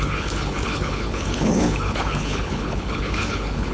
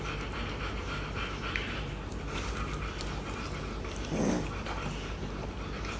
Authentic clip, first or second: second